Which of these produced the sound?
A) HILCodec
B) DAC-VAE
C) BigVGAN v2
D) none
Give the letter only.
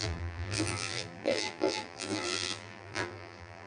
C